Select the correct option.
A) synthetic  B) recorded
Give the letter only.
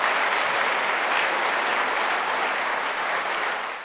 B